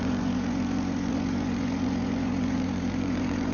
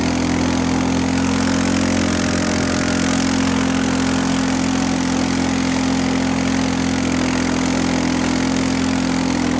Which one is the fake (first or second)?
first